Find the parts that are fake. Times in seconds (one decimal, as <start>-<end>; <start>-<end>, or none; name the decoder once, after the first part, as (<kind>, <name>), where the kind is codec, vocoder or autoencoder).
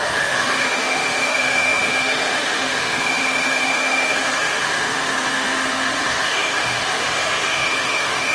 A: 0.0-8.3 (autoencoder, DAC-VAE)